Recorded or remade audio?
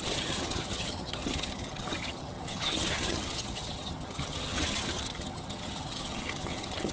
remade